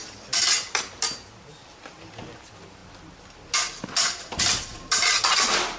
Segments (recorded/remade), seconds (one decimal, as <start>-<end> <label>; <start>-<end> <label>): 0.0-5.8 recorded